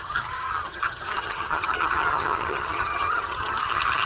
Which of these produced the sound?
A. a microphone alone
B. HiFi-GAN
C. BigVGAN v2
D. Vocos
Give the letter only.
B